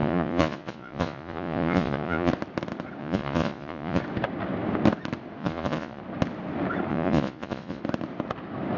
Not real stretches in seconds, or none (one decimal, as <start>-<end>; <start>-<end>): 0.0-2.3; 3.0-4.0; 5.4-6.0; 6.9-7.8